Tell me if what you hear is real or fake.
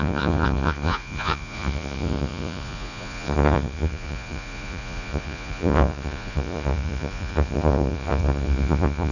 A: fake